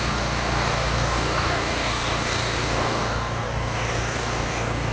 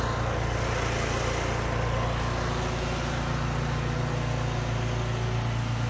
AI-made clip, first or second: first